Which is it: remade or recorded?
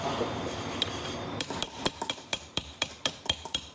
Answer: remade